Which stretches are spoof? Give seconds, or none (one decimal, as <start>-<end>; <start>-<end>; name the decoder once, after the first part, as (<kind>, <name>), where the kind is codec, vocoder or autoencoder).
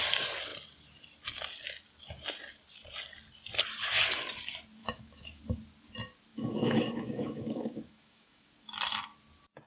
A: 4.8-5.4 (autoencoder, DAC-VAE); 6.3-8.5